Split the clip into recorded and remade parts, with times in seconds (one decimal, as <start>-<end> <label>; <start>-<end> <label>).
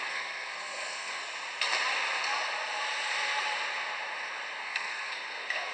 0.0-1.2 remade; 1.2-4.6 recorded; 4.6-5.7 remade